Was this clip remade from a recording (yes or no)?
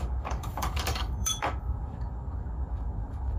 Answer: yes